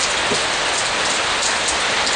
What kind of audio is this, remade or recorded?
recorded